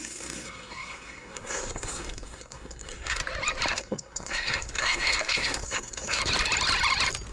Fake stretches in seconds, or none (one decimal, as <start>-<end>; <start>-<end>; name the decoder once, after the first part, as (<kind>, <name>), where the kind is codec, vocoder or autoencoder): 0.0-3.2 (codec, SNAC); 3.7-6.2